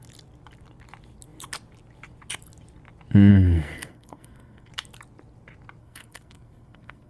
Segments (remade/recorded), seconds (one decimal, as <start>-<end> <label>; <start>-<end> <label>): 0.0-3.3 recorded; 3.3-4.7 remade; 4.7-5.8 recorded; 5.8-7.1 remade

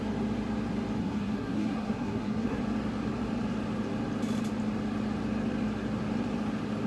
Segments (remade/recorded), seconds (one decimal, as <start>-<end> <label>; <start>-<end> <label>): 0.0-1.0 recorded; 1.0-2.6 remade; 2.6-6.9 recorded

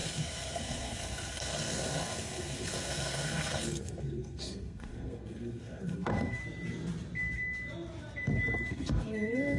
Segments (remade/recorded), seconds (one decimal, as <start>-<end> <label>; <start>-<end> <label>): 0.0-6.4 remade; 6.4-8.7 recorded; 8.7-9.6 remade

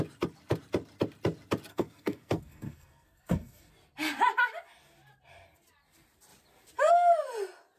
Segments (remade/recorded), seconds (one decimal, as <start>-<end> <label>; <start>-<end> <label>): 0.0-1.7 recorded; 1.7-3.7 remade; 3.7-7.8 recorded

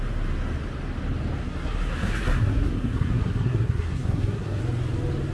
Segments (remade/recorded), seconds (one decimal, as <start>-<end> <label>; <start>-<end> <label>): 0.0-1.4 recorded; 1.4-4.6 remade; 4.6-5.3 recorded

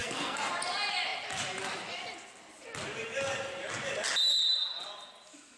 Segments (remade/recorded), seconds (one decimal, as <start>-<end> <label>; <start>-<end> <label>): 0.0-0.5 remade; 0.5-5.6 recorded

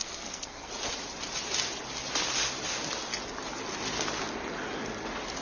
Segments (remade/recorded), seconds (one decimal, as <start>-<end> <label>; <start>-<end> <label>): 0.0-0.7 remade; 0.7-5.4 recorded